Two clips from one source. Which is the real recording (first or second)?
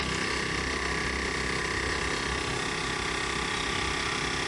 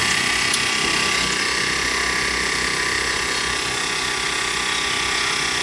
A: first